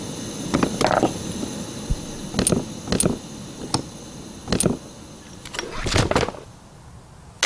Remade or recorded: recorded